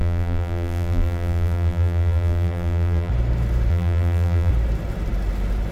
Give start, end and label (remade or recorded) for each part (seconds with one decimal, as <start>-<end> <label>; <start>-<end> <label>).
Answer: 0.0-3.1 remade; 3.1-3.7 recorded; 3.7-4.5 remade; 4.5-5.7 recorded